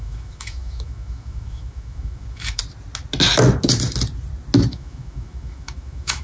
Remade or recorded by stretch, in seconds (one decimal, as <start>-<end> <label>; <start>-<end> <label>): 0.0-2.6 remade; 2.6-4.7 recorded; 4.7-6.2 remade